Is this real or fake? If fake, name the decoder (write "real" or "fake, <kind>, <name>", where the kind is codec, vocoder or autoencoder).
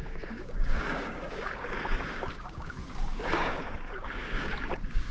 fake, codec, DAC